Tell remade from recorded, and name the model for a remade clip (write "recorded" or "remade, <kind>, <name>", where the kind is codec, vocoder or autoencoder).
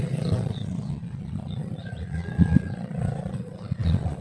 remade, vocoder, Vocos